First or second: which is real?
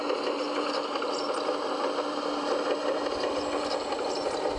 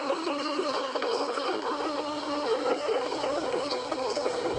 first